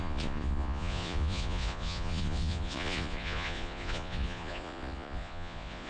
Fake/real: fake